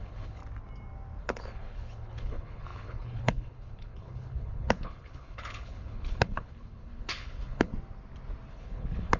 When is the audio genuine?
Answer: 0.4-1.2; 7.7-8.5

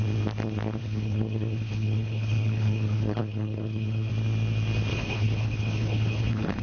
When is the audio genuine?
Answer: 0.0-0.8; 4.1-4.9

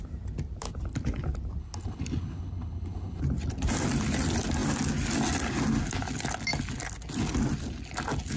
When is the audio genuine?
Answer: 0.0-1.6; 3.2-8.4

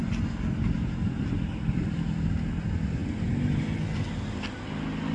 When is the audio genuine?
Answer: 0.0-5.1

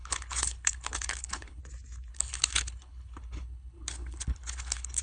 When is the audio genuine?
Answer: 1.6-2.1